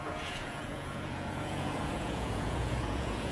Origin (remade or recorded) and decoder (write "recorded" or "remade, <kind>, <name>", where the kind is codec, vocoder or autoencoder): remade, vocoder, Vocos